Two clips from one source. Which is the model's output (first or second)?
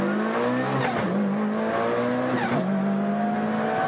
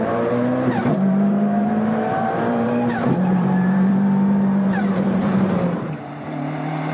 second